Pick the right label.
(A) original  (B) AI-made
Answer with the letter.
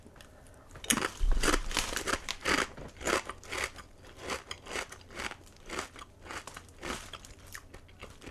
A